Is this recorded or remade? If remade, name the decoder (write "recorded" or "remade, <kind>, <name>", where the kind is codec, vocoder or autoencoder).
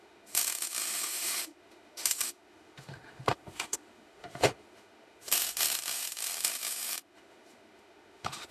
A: remade, autoencoder, DAC-VAE